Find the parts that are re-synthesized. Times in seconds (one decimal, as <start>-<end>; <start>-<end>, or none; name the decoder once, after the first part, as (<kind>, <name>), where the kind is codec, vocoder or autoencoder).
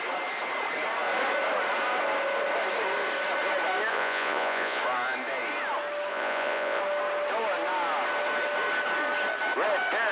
3.9-4.8 (vocoder, Vocos); 6.1-6.8